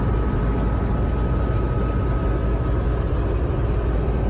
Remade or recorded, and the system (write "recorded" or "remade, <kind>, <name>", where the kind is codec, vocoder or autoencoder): recorded